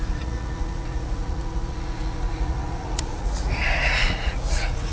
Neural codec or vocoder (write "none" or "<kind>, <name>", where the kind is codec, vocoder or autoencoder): vocoder, Vocos